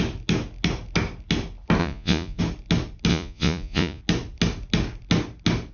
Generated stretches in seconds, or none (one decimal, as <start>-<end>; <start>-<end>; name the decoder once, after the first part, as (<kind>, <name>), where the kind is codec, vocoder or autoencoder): 1.8-2.4 (vocoder, Vocos); 3.1-4.0